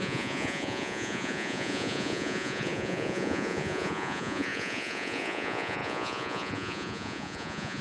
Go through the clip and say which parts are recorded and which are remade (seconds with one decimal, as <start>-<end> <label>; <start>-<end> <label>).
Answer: 0.0-7.8 remade